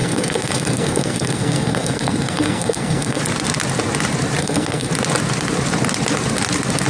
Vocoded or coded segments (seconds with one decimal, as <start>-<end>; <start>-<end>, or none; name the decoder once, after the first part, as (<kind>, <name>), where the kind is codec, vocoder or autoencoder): 0.0-3.2 (codec, SNAC); 4.4-4.9